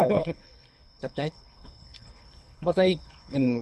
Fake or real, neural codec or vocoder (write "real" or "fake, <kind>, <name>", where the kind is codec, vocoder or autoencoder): fake, codec, HILCodec